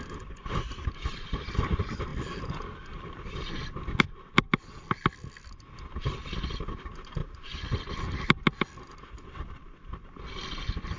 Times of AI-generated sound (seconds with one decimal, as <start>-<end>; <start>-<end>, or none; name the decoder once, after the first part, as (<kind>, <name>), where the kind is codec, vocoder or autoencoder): none